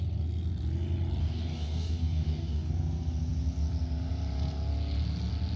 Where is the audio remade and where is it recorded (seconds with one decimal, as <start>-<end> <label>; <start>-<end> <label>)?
0.0-1.2 recorded; 1.2-2.7 remade; 2.7-5.6 recorded